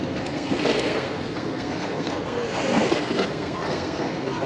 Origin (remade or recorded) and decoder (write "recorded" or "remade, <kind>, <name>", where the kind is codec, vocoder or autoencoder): remade, codec, SNAC